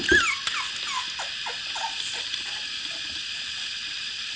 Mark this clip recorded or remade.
recorded